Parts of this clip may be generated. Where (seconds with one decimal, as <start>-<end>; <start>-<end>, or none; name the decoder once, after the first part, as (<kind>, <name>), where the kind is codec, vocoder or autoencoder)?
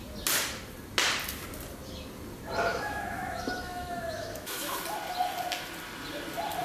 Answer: 2.7-4.8 (autoencoder, DAC-VAE)